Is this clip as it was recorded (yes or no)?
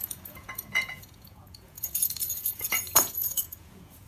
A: no